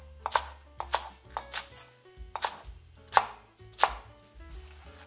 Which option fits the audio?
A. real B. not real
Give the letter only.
A